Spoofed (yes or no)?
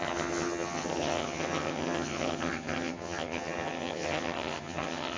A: yes